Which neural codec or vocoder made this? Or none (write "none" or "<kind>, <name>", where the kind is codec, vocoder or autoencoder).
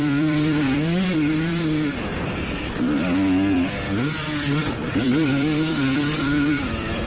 vocoder, BigVGAN v2